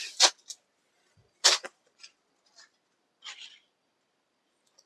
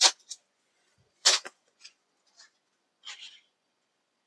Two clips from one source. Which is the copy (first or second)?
second